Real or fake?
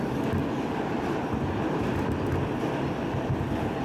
real